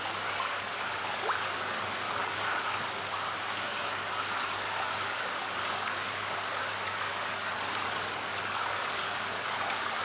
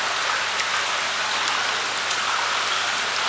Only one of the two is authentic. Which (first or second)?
second